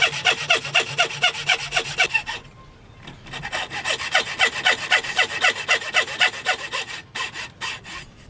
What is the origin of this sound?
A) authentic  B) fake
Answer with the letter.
A